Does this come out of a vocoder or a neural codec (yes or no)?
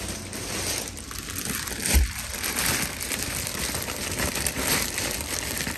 yes